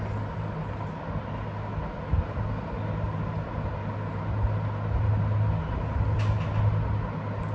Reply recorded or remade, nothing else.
recorded